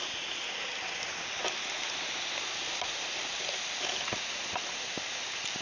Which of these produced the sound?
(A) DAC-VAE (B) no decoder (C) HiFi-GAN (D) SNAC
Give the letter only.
B